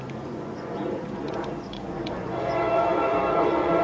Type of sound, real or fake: fake